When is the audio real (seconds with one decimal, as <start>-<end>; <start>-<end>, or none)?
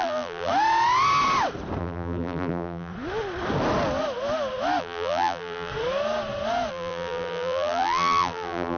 0.5-1.8; 2.9-4.8; 5.7-6.7